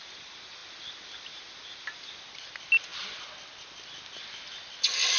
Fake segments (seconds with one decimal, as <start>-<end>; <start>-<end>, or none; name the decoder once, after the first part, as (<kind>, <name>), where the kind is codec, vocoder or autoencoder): none